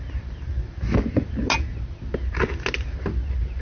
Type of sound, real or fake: real